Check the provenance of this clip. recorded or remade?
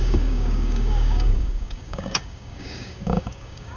remade